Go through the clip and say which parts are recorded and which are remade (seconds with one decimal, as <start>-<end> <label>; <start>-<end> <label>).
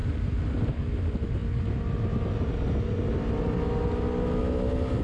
0.0-0.6 remade; 0.6-5.0 recorded